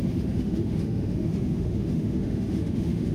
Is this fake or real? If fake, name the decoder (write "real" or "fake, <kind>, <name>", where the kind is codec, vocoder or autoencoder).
fake, autoencoder, DAC-VAE